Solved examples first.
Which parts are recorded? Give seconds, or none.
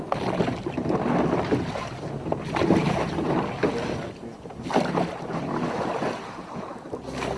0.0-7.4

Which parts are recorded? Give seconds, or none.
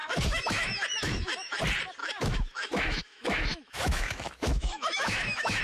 1.6-2.0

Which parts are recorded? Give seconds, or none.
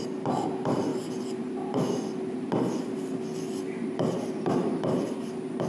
0.9-3.6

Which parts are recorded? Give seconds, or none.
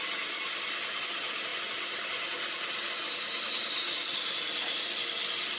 0.0-5.6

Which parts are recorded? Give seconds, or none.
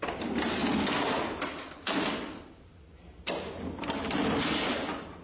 0.0-5.2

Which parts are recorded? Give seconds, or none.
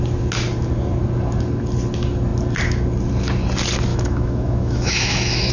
0.0-3.9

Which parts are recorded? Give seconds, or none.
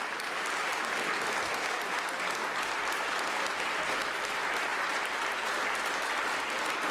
0.0-4.7; 5.6-6.9